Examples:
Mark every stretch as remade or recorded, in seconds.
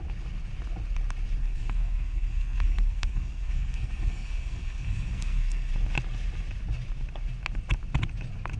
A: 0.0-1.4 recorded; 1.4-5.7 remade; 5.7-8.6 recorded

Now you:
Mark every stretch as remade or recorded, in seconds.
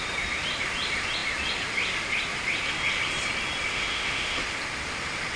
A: 0.0-3.7 recorded; 3.7-4.4 remade; 4.4-5.4 recorded